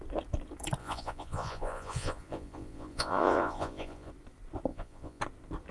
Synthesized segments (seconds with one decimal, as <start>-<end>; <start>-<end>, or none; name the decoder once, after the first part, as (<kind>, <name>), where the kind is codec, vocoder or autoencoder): 0.8-4.1 (vocoder, Vocos); 4.7-5.2